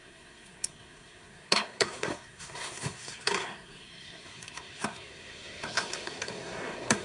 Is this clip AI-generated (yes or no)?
yes